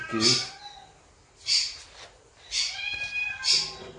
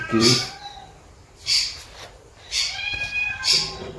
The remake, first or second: second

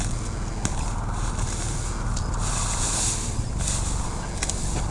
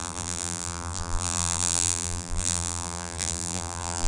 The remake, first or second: second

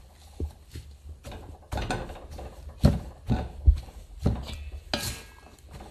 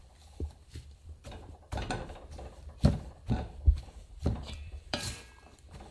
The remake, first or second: second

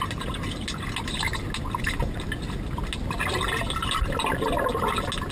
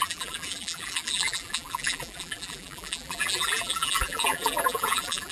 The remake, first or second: second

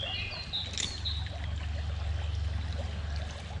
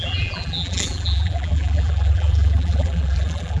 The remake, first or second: second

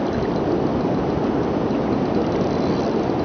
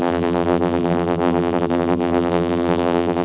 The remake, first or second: second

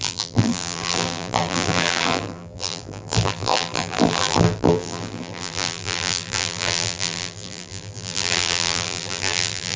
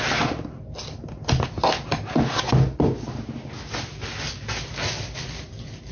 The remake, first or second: first